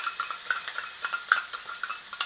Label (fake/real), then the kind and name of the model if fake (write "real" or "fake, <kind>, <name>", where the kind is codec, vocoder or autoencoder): real